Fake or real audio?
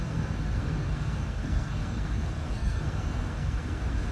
fake